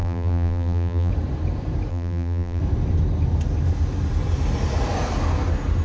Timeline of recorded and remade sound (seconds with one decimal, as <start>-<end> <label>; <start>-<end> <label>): 0.0-1.1 remade; 1.1-1.9 recorded; 1.9-2.6 remade; 2.6-5.8 recorded